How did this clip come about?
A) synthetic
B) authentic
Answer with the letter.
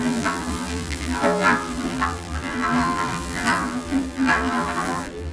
A